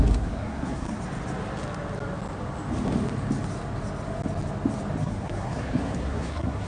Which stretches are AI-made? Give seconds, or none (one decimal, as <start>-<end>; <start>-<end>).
0.0-1.0; 5.0-6.7